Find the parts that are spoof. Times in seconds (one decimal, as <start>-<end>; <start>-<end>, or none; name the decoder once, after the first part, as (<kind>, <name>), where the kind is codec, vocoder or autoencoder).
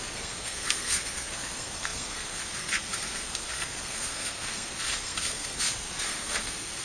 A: 0.0-6.8 (codec, SNAC)